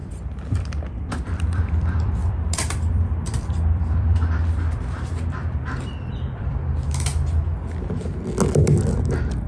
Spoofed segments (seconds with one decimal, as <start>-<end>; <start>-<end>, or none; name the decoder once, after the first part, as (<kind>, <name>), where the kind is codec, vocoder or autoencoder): 1.1-7.1 (vocoder, BigVGAN v2)

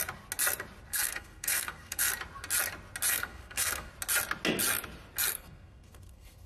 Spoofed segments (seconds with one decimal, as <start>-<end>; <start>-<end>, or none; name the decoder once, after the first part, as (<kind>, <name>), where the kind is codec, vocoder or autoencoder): 0.9-2.1 (codec, SNAC); 3.1-3.9; 5.3-6.5

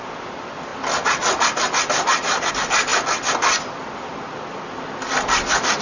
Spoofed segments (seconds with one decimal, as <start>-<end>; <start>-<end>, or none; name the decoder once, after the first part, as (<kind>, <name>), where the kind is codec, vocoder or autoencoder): none